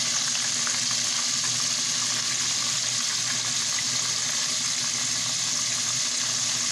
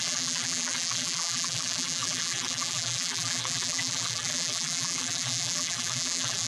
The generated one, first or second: second